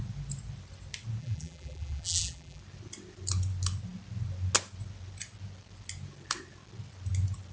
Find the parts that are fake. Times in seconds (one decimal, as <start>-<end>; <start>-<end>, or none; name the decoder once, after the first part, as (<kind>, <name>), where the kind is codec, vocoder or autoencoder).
1.2-2.6 (vocoder, BigVGAN v2)